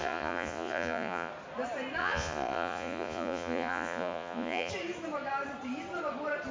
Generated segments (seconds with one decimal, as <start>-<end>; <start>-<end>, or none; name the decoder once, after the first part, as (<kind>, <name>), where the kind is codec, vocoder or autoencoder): 0.0-1.3 (vocoder, Vocos); 2.0-4.7

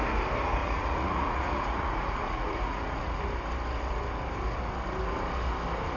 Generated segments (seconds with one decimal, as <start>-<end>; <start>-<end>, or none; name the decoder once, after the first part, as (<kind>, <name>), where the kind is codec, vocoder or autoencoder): 0.6-3.2 (vocoder, Vocos)

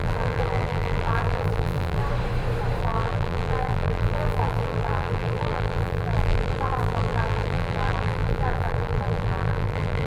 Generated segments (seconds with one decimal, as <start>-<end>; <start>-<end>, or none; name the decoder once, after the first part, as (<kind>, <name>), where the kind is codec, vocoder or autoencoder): 0.0-2.0 (vocoder, BigVGAN v2); 2.8-10.1

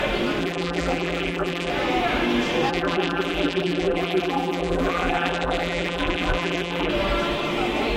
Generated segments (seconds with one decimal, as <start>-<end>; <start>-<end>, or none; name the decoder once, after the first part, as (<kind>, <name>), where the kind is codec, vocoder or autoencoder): 0.4-1.7 (vocoder, BigVGAN v2); 2.7-6.9